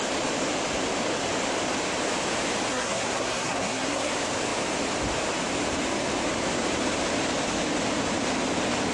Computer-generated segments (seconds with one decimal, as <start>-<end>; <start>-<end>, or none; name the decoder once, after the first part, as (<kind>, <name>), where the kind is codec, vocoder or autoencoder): 2.7-4.1 (codec, SNAC)